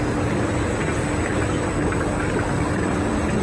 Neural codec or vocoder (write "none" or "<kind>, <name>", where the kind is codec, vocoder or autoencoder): none